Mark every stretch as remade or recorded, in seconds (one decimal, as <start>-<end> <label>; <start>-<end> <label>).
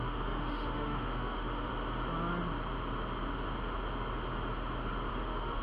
0.0-1.7 remade; 1.7-5.1 recorded; 5.1-5.6 remade